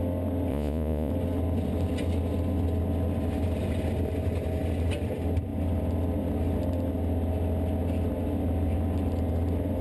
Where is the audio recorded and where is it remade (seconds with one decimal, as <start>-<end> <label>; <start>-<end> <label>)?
0.0-0.5 recorded; 0.5-1.1 remade; 1.1-9.8 recorded